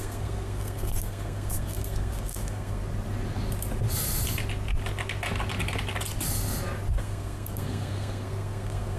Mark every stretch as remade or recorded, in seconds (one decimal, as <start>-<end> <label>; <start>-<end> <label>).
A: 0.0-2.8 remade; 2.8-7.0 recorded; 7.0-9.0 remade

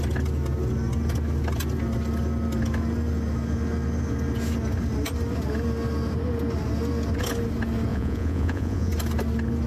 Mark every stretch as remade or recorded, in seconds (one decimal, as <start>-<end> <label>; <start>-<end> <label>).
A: 0.0-7.9 recorded; 7.9-8.9 remade; 8.9-9.7 recorded

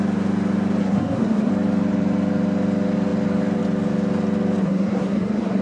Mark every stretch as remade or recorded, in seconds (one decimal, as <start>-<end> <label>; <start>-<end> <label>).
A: 0.0-0.8 recorded; 0.8-1.5 remade; 1.5-4.6 recorded; 4.6-5.6 remade

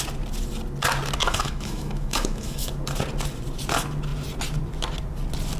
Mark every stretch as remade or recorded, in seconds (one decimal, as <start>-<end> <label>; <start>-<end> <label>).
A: 0.0-1.2 recorded; 1.2-2.7 remade; 2.7-5.6 recorded

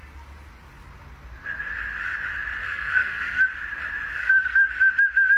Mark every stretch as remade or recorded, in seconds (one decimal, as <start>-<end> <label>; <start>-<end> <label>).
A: 0.0-2.6 recorded; 2.6-3.4 remade; 3.4-4.1 recorded; 4.1-4.7 remade; 4.7-5.4 recorded

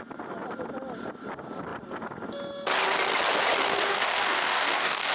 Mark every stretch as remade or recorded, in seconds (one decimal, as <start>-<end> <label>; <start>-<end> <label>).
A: 0.0-3.7 recorded; 3.7-5.1 remade

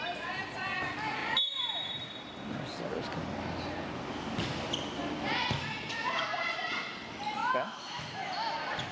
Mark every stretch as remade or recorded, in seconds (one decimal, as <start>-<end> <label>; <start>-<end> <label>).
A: 0.0-7.4 recorded; 7.4-8.3 remade; 8.3-8.9 recorded

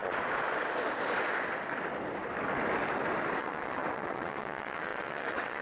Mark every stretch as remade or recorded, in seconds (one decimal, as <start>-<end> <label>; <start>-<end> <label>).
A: 0.0-3.4 recorded; 3.4-5.6 remade